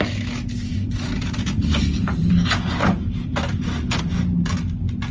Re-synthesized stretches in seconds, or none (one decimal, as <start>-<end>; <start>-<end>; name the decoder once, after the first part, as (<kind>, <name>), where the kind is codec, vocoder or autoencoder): 0.7-2.3 (vocoder, BigVGAN v2); 2.8-4.0